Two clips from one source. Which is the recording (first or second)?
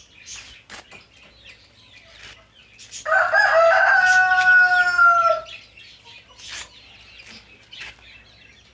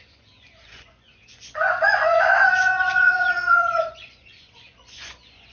first